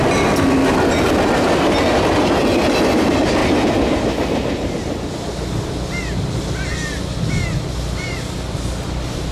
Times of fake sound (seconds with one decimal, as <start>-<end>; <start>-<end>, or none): none